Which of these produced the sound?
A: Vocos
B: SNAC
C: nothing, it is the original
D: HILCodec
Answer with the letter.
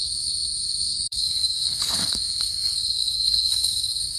B